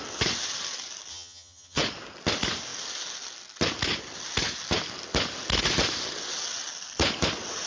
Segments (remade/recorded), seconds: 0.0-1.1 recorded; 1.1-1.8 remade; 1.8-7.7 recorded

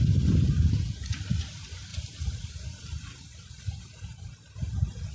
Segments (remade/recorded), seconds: 0.0-5.1 recorded

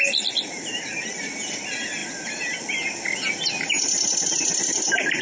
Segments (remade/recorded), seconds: 0.0-5.2 recorded

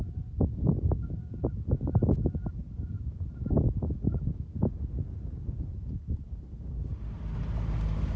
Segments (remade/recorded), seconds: 0.0-8.2 recorded

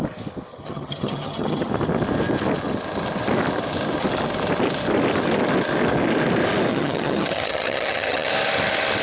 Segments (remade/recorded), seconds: 0.0-0.5 recorded; 0.5-1.7 remade; 1.7-6.7 recorded; 6.7-8.3 remade; 8.3-9.0 recorded

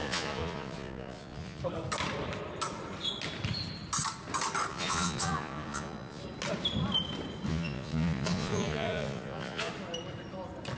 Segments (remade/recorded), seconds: 0.0-1.6 remade; 1.6-4.7 recorded; 4.7-6.2 remade; 6.2-7.5 recorded; 7.5-9.7 remade; 9.7-10.8 recorded

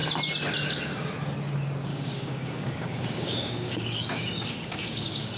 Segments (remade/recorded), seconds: 0.0-1.9 recorded; 1.9-5.4 remade

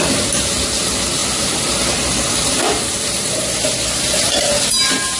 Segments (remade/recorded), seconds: 0.0-5.2 recorded